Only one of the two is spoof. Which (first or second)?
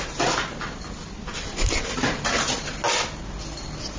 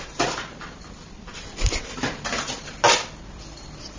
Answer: second